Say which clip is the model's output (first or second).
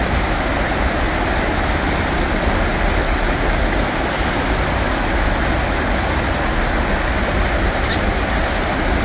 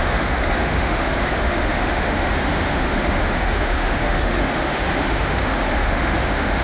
second